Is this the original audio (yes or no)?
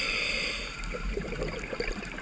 no